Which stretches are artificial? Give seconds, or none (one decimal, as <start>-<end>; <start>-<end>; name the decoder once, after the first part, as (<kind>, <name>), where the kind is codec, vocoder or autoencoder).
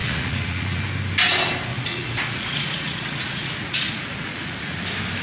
0.0-0.8 (vocoder, Vocos); 1.7-4.8